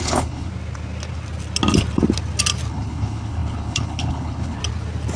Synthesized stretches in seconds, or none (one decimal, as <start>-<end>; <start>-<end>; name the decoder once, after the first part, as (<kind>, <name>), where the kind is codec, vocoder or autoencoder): 0.0-0.5 (codec, HILCodec); 2.7-4.6